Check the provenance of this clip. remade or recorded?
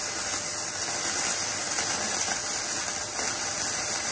recorded